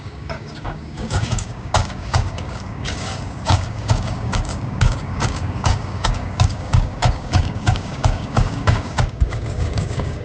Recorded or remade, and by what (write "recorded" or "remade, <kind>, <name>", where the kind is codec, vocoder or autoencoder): remade, codec, DAC